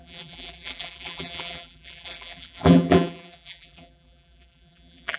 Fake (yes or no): yes